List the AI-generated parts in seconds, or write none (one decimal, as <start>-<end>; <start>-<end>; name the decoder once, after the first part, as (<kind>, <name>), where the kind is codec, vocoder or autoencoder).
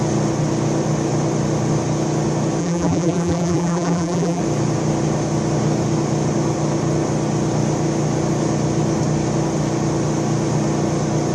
2.6-4.4 (vocoder, BigVGAN v2)